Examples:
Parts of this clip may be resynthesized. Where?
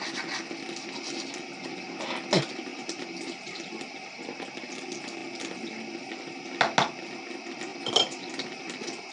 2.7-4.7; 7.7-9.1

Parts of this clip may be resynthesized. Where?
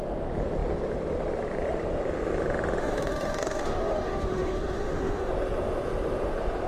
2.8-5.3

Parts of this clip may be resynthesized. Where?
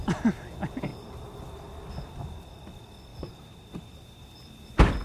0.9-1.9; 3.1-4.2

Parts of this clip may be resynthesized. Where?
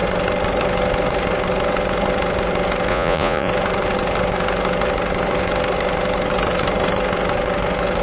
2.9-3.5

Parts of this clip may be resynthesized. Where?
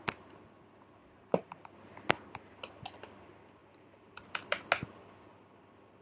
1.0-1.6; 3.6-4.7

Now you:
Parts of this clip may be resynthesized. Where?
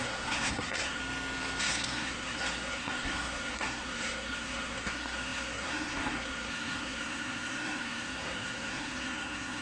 0.0-1.0; 1.6-9.6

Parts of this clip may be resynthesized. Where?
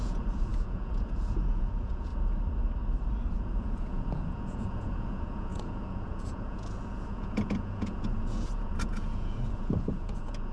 0.0-2.1; 3.3-10.5